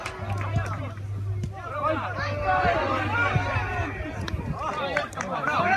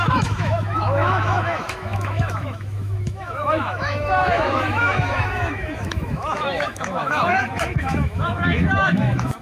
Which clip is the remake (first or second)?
second